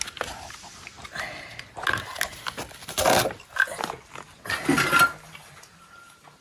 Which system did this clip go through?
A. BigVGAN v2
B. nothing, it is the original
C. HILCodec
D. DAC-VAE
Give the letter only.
B